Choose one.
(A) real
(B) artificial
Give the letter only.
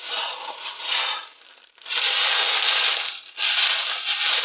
A